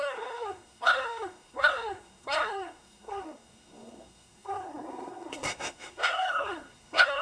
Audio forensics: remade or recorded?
remade